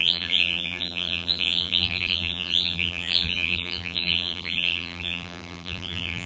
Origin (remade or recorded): remade